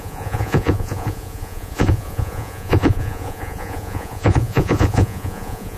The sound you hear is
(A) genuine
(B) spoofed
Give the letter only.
B